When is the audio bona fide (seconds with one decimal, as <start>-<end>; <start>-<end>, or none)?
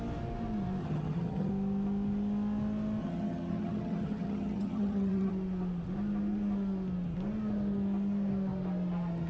0.0-0.8; 1.5-3.0; 5.3-9.3